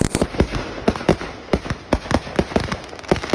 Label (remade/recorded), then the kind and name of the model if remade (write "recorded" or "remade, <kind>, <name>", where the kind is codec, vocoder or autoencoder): recorded